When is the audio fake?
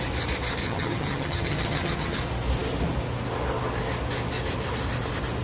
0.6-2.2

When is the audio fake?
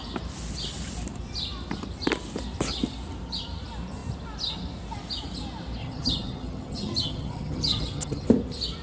5.8-8.3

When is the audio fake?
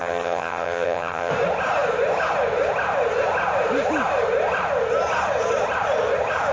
0.0-1.3